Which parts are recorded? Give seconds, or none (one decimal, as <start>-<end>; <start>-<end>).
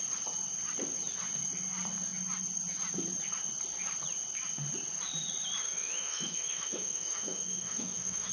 0.0-5.6